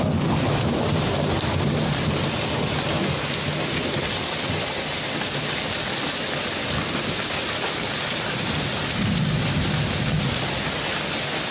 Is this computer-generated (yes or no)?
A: no